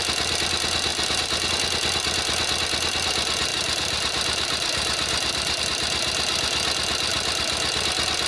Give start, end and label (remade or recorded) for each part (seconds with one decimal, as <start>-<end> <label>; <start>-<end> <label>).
0.0-0.9 recorded; 0.9-1.5 remade; 1.5-3.5 recorded; 3.5-5.6 remade; 5.6-8.3 recorded